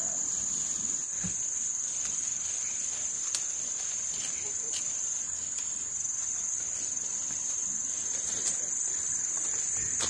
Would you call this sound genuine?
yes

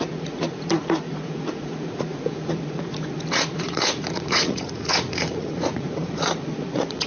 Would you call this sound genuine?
no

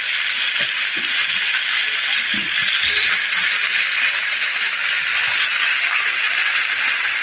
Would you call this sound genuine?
yes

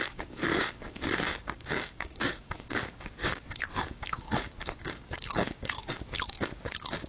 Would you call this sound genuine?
no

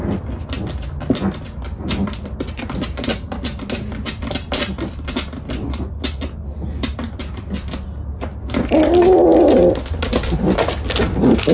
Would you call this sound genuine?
yes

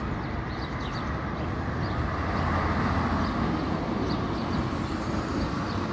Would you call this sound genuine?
yes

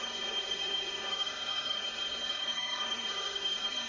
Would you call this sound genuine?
no